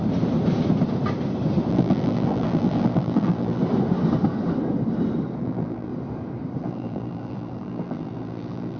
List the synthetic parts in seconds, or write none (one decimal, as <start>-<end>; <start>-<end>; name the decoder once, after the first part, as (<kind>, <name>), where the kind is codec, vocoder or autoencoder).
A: 1.7-3.6 (vocoder, BigVGAN v2); 5.4-5.9; 6.6-8.8